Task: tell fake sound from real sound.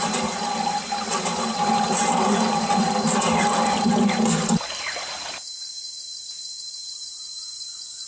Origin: real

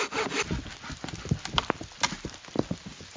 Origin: real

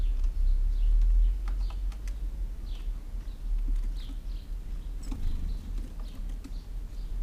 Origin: real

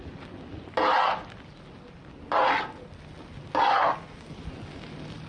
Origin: real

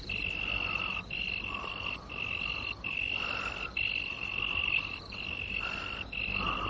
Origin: real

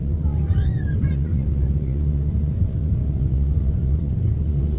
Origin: fake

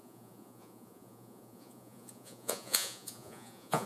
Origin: fake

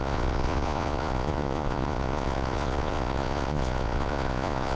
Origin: fake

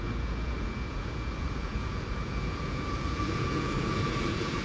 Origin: fake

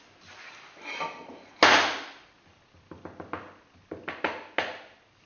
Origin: real